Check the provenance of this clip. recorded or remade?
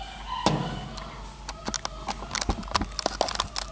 recorded